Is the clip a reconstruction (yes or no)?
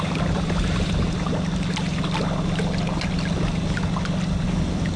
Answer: no